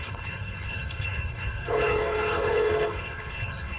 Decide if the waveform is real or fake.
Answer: fake